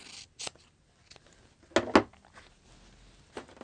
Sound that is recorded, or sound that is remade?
recorded